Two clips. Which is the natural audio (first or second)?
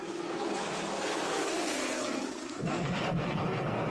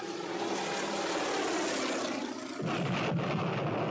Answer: second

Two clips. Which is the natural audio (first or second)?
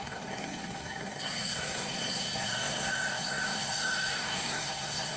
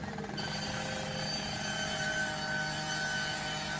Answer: second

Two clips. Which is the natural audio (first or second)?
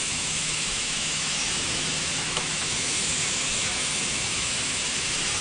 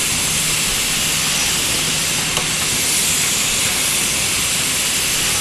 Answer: second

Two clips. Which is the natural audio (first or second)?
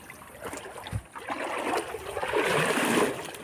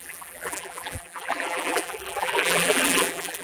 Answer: first